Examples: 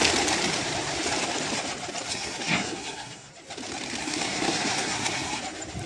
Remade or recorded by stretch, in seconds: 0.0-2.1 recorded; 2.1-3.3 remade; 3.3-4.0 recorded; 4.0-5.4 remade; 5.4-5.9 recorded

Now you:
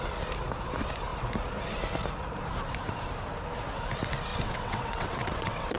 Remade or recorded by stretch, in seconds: 0.0-4.3 recorded; 4.3-5.8 remade